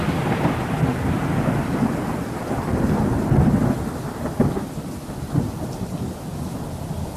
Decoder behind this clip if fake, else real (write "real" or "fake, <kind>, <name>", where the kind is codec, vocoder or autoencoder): real